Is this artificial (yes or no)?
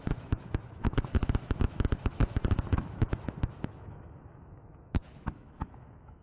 yes